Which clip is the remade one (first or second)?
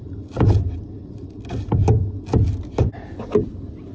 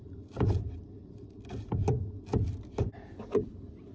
second